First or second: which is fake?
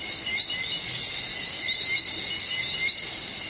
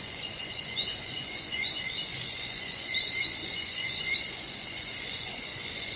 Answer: second